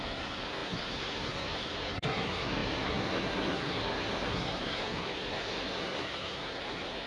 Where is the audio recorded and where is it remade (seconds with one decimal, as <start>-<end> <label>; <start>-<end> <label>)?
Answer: 0.0-7.1 remade